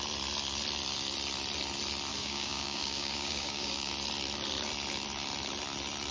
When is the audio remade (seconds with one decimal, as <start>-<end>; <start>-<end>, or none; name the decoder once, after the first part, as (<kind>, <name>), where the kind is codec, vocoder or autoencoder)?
2.1-3.9 (codec, DAC)